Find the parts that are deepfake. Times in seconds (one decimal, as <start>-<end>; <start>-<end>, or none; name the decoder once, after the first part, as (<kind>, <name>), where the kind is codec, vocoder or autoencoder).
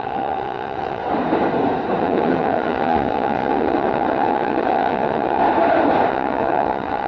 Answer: 0.0-1.0 (vocoder, WaveNeXt); 2.0-5.4; 6.1-7.1